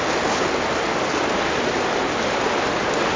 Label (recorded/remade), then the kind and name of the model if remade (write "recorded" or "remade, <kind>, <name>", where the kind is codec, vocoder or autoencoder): recorded